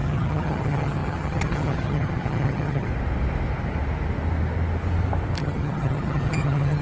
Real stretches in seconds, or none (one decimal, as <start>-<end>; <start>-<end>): 2.9-5.4